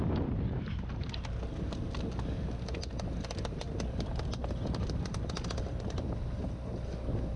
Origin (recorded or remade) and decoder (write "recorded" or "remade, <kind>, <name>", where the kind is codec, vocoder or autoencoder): recorded